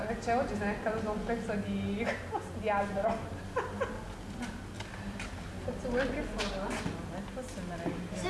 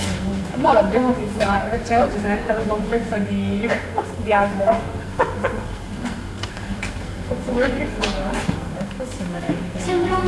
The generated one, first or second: second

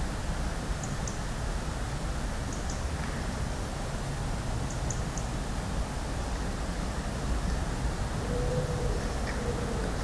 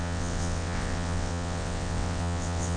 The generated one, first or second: second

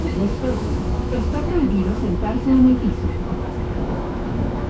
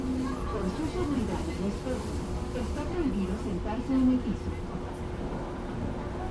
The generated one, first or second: first